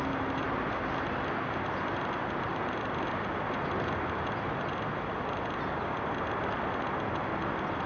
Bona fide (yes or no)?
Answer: yes